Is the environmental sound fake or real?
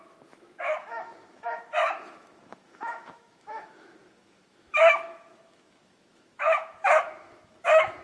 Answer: fake